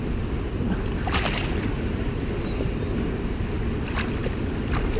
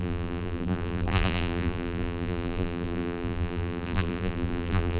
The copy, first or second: second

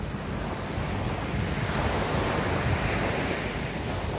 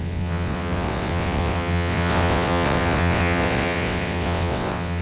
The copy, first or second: second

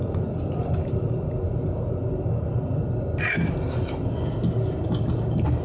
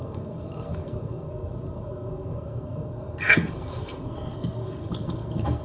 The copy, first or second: second